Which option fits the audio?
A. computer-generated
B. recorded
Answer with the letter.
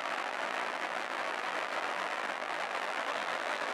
A